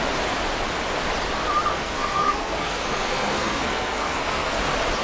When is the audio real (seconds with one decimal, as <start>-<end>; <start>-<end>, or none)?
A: 0.0-1.7; 4.6-5.0